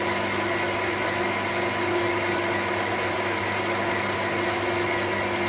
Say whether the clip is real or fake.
real